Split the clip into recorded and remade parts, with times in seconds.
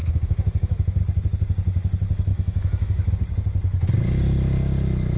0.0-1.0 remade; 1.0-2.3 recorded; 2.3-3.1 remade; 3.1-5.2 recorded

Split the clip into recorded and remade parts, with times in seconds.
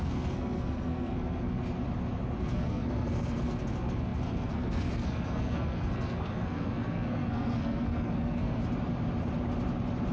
0.0-1.6 remade; 1.6-2.4 recorded; 2.4-8.6 remade; 8.6-10.1 recorded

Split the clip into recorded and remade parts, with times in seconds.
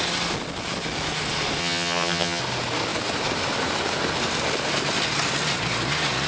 0.0-1.6 recorded; 1.6-2.4 remade; 2.4-6.3 recorded